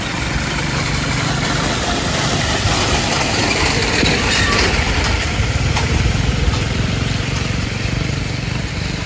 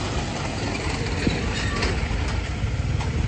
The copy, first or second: first